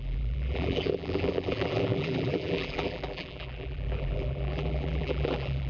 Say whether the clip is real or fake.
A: fake